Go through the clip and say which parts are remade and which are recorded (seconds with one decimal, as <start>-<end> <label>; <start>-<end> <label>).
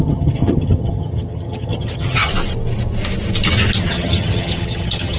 0.0-2.3 remade; 2.3-3.8 recorded; 3.8-5.2 remade